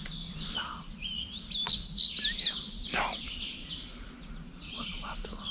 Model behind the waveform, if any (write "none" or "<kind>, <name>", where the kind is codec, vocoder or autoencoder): none